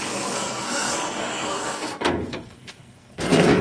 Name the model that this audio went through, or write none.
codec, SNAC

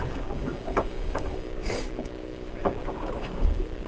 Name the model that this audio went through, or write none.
codec, DAC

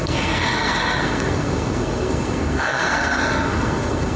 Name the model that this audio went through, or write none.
codec, SNAC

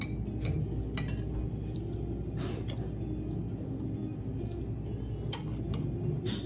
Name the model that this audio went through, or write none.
none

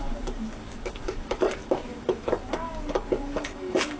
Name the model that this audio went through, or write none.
codec, DAC